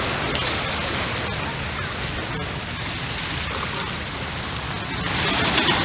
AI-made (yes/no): no